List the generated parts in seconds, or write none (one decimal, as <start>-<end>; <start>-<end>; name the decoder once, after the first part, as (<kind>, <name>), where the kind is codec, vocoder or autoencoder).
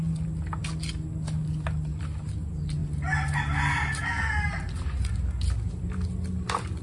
none